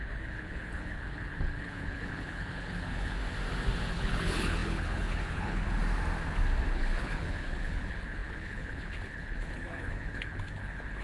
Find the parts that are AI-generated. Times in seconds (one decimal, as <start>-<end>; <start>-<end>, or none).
0.0-3.2; 3.9-5.8; 6.7-11.0